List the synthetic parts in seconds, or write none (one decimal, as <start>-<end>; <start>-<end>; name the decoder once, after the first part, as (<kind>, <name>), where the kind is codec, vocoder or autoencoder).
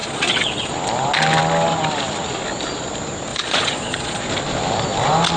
0.0-0.7 (vocoder, Vocos); 3.3-4.2